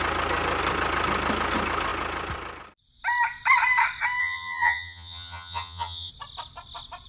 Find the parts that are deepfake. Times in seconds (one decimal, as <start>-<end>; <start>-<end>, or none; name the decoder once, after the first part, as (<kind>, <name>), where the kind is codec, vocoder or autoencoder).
4.2-6.1 (vocoder, HiFi-GAN)